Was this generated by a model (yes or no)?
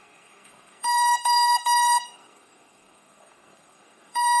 yes